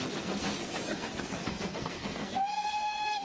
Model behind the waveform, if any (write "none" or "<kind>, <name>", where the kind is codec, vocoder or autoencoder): codec, SNAC